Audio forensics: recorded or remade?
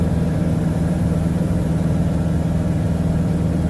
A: recorded